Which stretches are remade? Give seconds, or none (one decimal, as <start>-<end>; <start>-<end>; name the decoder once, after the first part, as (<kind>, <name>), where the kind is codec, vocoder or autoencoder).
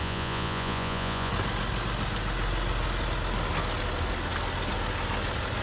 0.0-1.3 (vocoder, Vocos)